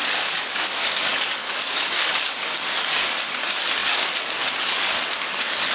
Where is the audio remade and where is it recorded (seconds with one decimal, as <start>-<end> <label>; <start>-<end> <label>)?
0.0-5.7 remade